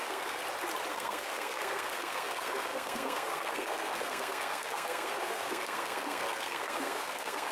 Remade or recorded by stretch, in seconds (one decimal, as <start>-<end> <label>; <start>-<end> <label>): 0.0-0.4 remade; 0.4-0.9 recorded; 0.9-7.5 remade